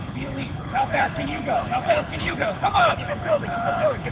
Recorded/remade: remade